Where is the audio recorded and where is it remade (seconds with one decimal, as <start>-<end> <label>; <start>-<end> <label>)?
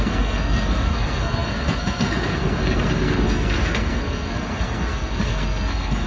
0.0-6.1 remade